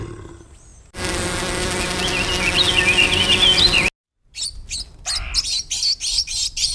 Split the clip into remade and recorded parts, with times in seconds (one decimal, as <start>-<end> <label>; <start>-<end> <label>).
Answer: 0.0-6.7 recorded